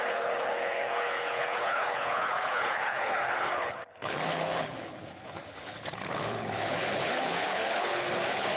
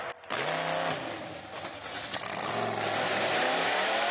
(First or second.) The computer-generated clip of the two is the first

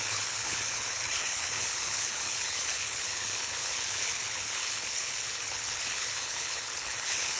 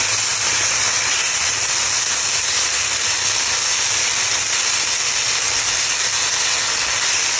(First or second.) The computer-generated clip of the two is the first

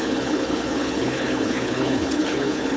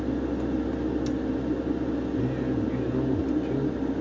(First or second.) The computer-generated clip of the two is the first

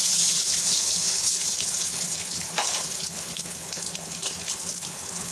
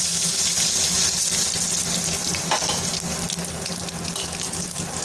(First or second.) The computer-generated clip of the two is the first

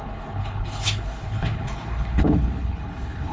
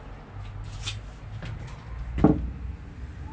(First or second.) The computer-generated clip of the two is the first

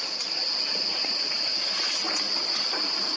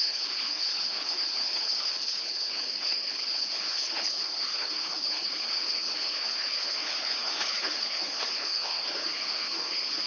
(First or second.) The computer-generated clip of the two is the second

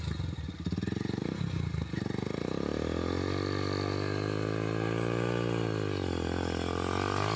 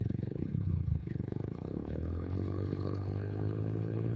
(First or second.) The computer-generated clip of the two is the second